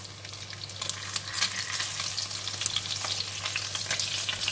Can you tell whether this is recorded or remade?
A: recorded